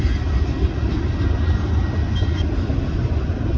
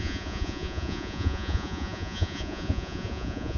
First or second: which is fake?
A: second